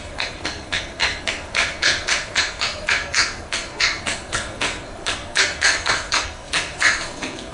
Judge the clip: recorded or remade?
remade